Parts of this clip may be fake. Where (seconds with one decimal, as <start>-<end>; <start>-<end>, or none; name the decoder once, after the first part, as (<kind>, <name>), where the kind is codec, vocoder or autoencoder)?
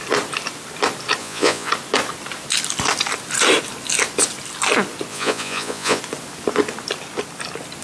1.2-1.7 (vocoder, Vocos); 5.1-6.0